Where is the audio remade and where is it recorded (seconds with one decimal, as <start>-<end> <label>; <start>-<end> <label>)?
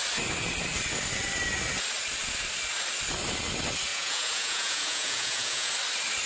0.0-3.9 recorded; 3.9-5.7 remade; 5.7-6.3 recorded